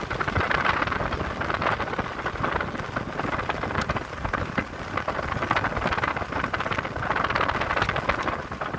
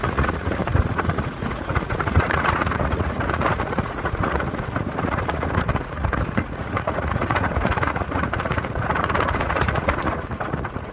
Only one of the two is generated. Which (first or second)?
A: second